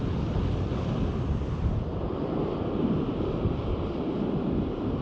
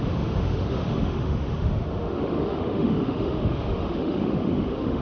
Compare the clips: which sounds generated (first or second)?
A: second